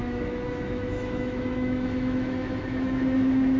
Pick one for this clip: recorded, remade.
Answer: remade